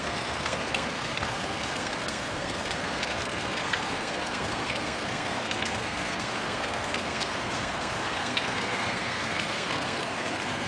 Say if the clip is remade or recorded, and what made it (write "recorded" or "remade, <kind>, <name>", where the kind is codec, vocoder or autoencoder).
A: remade, codec, SNAC